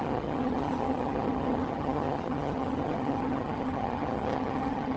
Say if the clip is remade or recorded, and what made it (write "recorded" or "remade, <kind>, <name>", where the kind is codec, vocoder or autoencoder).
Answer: remade, vocoder, HiFi-GAN